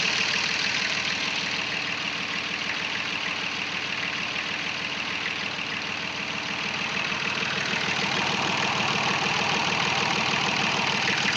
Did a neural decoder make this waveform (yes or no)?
no